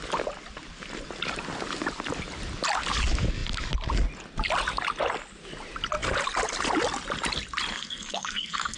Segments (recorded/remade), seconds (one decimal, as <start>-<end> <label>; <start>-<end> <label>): 0.0-7.7 recorded; 7.7-8.8 remade